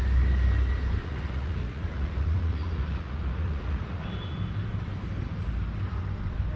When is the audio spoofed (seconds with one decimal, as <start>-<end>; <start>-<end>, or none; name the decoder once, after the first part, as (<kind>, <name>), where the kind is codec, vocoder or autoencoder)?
1.0-4.0 (vocoder, Vocos)